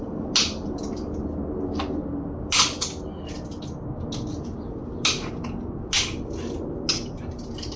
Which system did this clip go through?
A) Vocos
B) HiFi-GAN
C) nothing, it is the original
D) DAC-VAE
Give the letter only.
C